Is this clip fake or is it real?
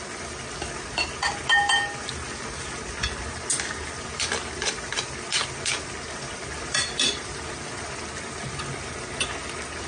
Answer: real